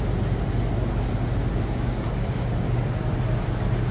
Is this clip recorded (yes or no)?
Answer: yes